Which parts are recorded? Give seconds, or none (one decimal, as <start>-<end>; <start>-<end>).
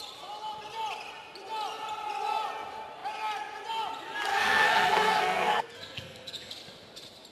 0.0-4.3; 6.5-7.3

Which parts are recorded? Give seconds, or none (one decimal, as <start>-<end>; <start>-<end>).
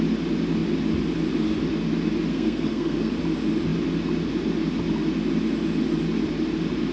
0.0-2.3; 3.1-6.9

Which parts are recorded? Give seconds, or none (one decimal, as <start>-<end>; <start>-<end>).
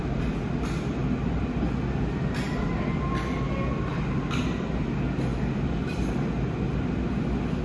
0.0-7.6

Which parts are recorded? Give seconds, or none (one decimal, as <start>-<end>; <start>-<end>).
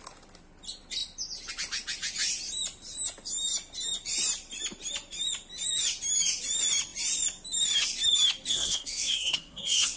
0.0-8.5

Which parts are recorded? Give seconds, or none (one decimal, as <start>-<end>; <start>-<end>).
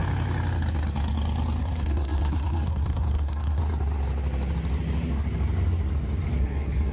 0.0-1.6; 3.6-6.4